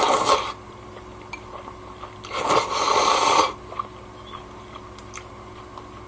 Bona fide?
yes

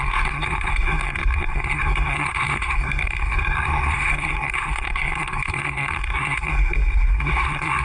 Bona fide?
no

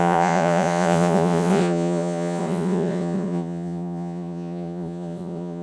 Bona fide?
no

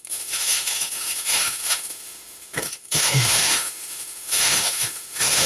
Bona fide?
no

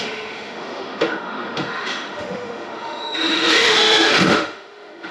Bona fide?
no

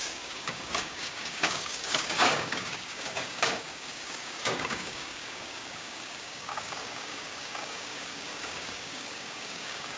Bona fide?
no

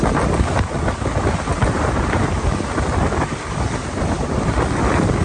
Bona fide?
yes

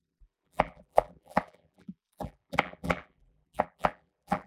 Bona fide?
no